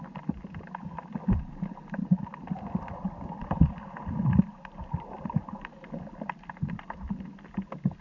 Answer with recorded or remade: recorded